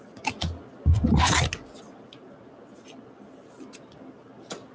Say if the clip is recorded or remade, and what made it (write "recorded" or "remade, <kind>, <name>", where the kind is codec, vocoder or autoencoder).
recorded